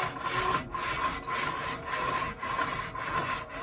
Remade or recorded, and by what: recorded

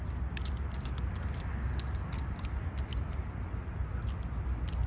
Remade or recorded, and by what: recorded